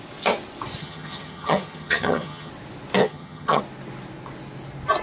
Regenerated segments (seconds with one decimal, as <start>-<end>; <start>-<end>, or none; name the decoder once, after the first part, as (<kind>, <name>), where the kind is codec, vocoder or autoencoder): 0.8-2.5 (vocoder, HiFi-GAN); 3.0-3.6